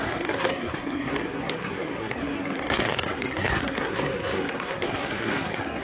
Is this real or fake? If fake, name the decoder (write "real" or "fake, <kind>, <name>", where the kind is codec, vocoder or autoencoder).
fake, codec, SNAC